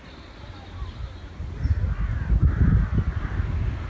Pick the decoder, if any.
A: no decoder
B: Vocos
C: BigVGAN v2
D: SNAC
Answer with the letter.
A